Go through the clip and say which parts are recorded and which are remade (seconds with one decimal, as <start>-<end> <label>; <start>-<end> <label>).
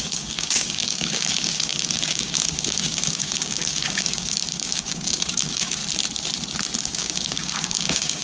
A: 0.0-5.8 remade; 5.8-6.8 recorded; 6.8-8.2 remade